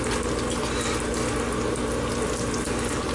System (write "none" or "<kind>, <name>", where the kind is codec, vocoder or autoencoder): none